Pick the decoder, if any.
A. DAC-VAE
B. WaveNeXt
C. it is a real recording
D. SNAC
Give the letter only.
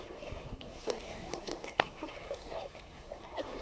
D